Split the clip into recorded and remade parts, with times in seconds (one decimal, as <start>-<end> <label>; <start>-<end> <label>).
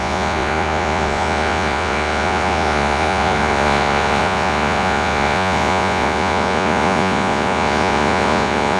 0.0-8.8 remade